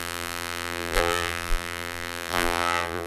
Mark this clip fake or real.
fake